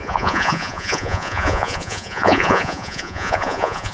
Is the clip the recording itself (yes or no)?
no